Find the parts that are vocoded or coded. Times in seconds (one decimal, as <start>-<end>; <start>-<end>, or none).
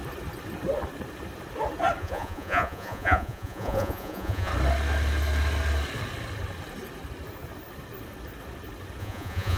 2.0-4.5; 9.0-9.6